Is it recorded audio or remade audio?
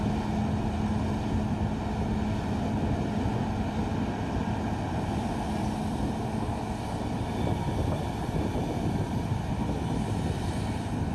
recorded